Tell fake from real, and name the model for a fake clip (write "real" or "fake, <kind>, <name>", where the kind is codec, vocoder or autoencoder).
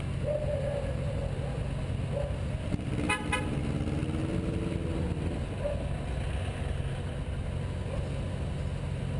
real